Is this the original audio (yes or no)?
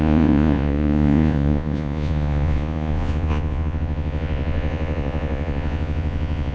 no